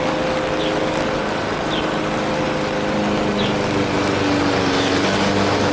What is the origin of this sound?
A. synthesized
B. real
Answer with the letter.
B